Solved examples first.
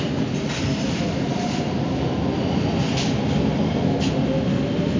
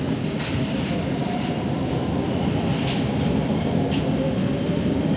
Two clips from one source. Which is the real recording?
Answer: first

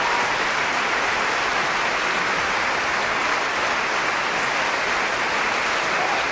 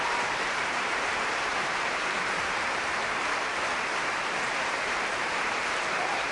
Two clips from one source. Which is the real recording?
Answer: first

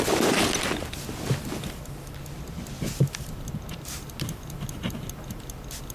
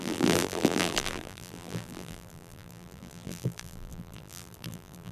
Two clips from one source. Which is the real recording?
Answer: first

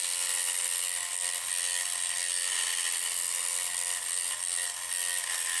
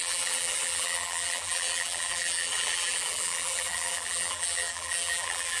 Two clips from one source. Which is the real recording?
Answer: first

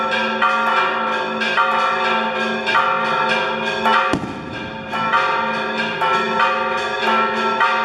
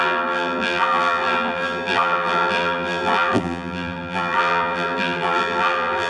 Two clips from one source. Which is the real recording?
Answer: first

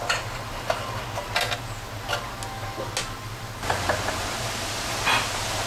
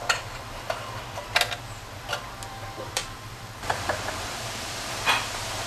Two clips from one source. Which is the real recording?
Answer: first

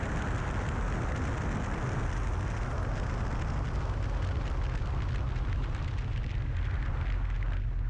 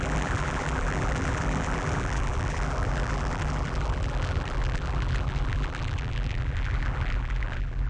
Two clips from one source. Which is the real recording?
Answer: first